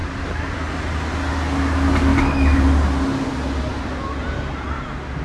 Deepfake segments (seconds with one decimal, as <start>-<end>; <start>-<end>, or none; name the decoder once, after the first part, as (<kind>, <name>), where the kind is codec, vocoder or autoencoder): none